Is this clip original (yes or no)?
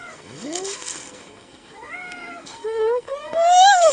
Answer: no